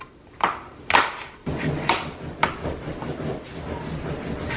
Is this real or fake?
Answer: real